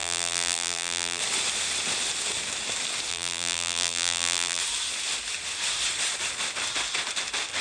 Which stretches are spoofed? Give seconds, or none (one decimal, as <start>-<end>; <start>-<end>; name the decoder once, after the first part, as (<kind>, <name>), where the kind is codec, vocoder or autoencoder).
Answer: 0.0-1.2 (vocoder, BigVGAN v2); 3.1-4.6